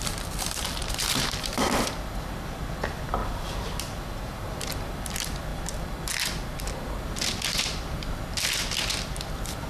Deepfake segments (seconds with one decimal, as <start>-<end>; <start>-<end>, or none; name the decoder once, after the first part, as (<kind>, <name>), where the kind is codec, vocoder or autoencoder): 0.0-0.8 (vocoder, BigVGAN v2); 1.5-3.2; 3.8-5.5; 8.3-9.7